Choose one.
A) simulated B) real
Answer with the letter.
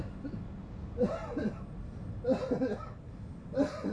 B